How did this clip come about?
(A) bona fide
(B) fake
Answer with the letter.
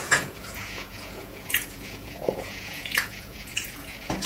B